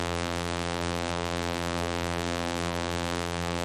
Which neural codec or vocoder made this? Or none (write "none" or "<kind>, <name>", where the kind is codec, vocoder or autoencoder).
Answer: vocoder, BigVGAN v2